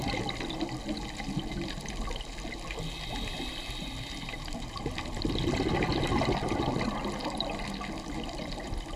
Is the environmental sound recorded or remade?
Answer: recorded